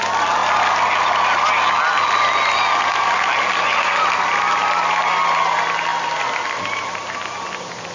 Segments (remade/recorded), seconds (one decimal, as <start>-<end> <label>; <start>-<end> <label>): 0.0-0.4 recorded; 0.4-2.1 remade; 2.1-4.6 recorded; 4.6-5.2 remade; 5.2-7.9 recorded